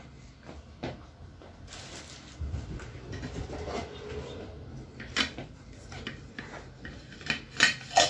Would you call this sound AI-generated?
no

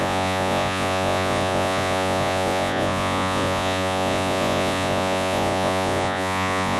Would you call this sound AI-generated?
yes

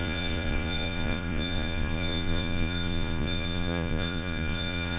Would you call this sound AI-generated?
yes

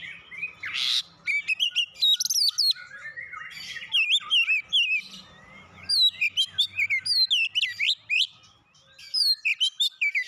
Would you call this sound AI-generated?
no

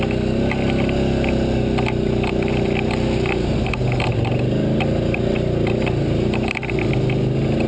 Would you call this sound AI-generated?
no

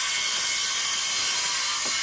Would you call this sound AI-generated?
no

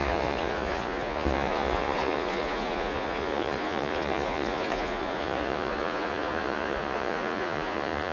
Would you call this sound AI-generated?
yes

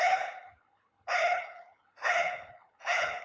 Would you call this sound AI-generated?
yes